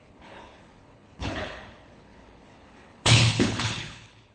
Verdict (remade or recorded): remade